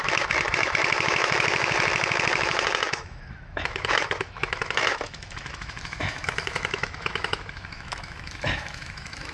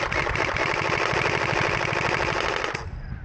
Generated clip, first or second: first